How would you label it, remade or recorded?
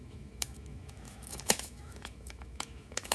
remade